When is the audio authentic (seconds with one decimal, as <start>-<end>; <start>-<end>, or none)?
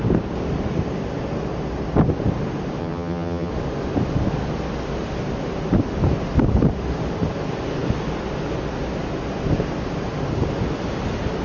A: 0.0-2.8; 3.5-11.4